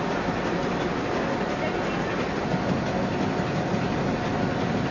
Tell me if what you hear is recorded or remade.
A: recorded